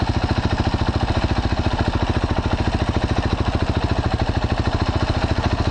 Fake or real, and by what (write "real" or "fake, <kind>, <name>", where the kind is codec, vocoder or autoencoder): real